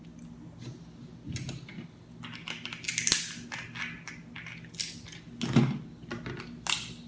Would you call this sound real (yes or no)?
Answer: yes